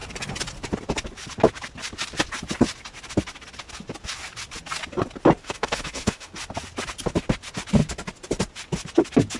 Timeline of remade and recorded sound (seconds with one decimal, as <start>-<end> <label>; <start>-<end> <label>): 0.0-5.4 recorded; 5.4-6.3 remade; 6.3-9.4 recorded